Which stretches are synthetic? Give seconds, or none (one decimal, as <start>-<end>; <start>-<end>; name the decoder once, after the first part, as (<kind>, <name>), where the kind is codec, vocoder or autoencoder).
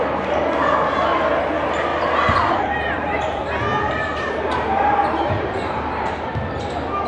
1.9-6.2 (vocoder, BigVGAN v2)